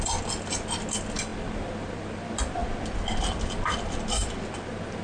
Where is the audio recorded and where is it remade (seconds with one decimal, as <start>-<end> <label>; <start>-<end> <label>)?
0.0-5.0 recorded

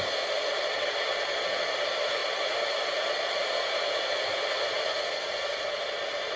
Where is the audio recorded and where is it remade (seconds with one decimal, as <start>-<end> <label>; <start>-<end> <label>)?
0.0-6.4 recorded

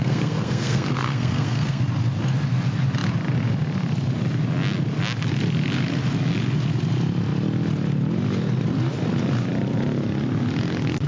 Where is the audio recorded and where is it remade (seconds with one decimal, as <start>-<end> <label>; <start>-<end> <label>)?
0.0-1.8 remade; 1.8-11.1 recorded

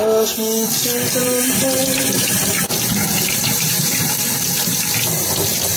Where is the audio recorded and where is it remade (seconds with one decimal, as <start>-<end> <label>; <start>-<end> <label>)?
0.0-1.2 recorded; 1.2-2.5 remade; 2.5-3.0 recorded; 3.0-4.1 remade; 4.1-5.8 recorded

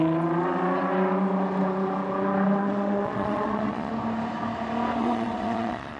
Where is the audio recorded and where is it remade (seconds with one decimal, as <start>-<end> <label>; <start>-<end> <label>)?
0.0-2.6 recorded; 2.6-3.9 remade; 3.9-5.0 recorded; 5.0-6.0 remade

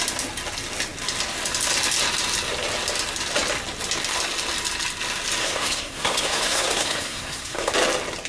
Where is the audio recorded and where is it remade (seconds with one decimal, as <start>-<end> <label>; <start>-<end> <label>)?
0.0-5.4 recorded; 5.4-7.7 remade; 7.7-8.3 recorded

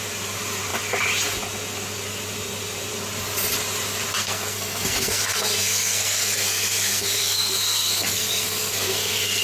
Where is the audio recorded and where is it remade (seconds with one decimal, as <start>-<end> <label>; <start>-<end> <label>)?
0.0-4.2 recorded; 4.2-9.4 remade

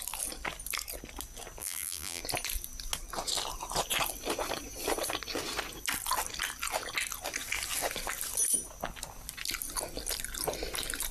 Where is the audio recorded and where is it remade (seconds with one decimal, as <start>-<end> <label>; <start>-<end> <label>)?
0.0-1.6 recorded; 1.6-2.2 remade; 2.2-11.1 recorded